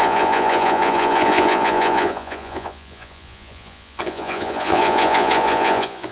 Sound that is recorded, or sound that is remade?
remade